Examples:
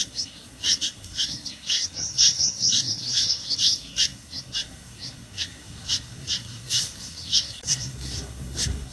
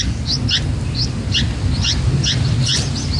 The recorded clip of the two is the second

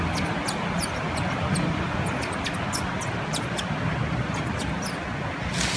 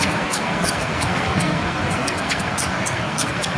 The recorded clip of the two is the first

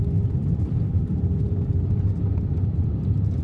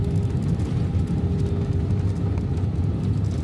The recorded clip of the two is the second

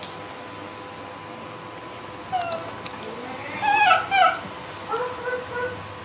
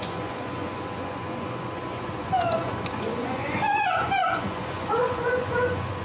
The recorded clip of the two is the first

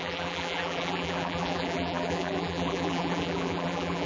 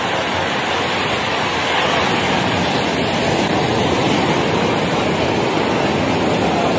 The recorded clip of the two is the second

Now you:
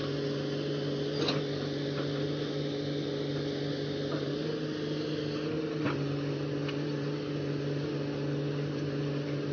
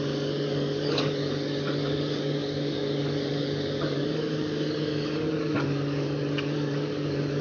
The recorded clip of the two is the first